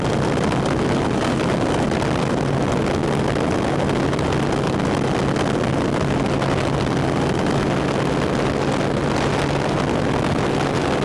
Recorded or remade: recorded